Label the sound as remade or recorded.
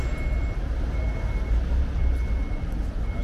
recorded